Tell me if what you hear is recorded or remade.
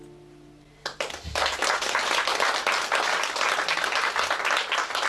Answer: recorded